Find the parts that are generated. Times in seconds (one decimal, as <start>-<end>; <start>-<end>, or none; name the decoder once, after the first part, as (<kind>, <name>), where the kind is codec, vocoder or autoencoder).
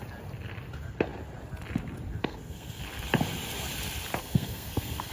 2.2-2.8 (codec, SNAC); 4.2-5.1